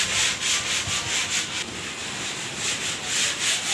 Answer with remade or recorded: recorded